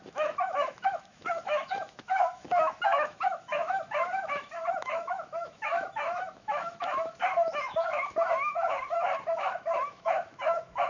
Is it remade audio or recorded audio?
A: remade